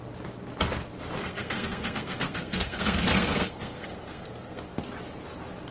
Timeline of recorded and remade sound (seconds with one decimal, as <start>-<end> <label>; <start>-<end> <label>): 0.0-1.2 recorded; 1.2-4.6 remade; 4.6-5.7 recorded